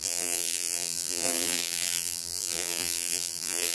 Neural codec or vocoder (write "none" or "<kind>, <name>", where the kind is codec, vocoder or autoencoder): vocoder, BigVGAN v2